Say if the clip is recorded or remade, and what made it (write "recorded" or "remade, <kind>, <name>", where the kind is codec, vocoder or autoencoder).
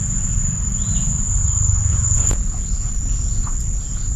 recorded